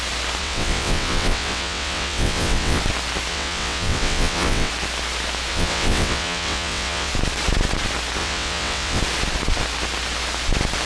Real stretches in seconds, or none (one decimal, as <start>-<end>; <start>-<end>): 0.0-0.4; 2.8-3.3; 4.7-5.5; 7.1-8.2; 9.0-10.9